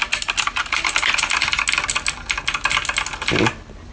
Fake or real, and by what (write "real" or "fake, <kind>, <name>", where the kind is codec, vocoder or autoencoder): real